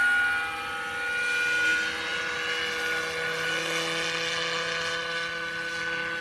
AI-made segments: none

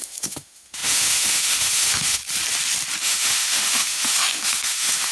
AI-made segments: 0.0-2.2 (autoencoder, DAC-VAE); 3.0-5.1

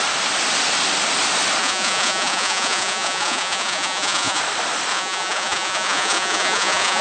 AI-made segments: 1.6-4.4 (vocoder, Vocos); 4.9-7.0

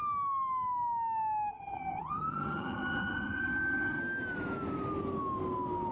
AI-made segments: 1.5-4.0 (vocoder, HiFi-GAN)

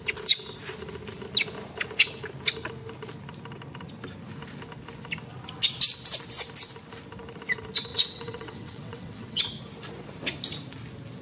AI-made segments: 7.9-9.4 (vocoder, WaveNeXt)

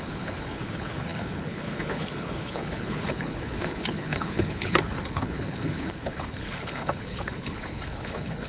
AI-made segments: 0.0-8.5 (codec, HILCodec)